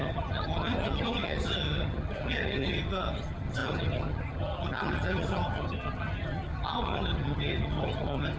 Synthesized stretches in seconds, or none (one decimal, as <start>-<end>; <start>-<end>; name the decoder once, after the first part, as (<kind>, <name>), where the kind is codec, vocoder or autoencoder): 0.0-8.4 (vocoder, HiFi-GAN)